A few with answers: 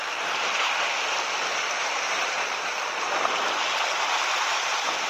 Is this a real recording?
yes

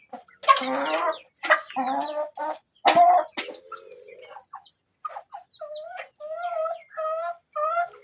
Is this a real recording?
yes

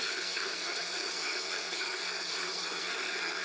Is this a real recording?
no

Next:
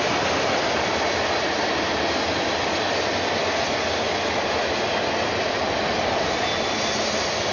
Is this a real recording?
yes